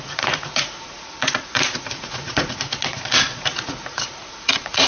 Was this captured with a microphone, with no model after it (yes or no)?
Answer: no